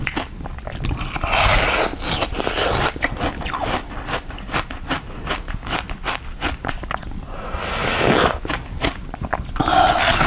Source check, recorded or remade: recorded